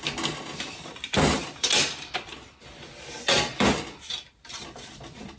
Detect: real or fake real